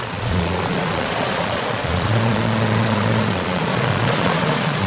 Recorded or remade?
remade